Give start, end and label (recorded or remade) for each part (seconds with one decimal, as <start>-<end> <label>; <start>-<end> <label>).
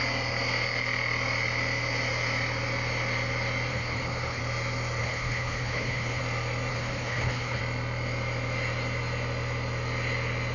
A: 0.0-3.7 recorded; 3.7-4.4 remade; 4.4-5.0 recorded; 5.0-6.2 remade; 6.2-6.7 recorded; 6.7-7.6 remade; 7.6-10.5 recorded